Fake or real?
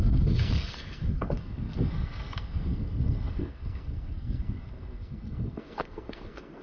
fake